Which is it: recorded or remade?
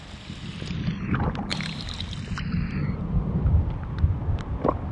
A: recorded